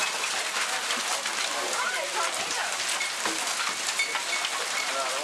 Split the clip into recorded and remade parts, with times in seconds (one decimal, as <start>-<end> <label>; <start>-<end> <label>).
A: 0.0-1.4 recorded; 1.4-2.6 remade; 2.6-4.5 recorded; 4.5-5.2 remade